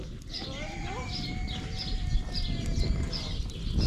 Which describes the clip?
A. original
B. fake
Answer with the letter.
A